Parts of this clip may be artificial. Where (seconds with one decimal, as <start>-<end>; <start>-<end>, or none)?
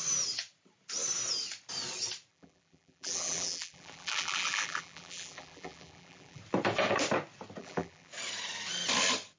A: 2.3-6.4; 7.6-8.1